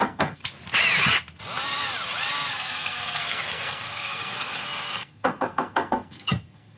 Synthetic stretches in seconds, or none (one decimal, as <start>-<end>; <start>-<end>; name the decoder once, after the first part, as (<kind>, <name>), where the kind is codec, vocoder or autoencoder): 0.0-0.4 (codec, SNAC); 2.5-6.8